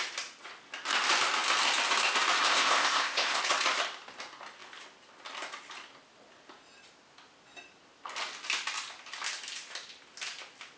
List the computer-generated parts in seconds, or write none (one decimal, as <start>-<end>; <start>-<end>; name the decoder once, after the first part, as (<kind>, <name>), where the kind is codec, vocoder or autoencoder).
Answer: 2.4-3.4 (codec, ZipCodec)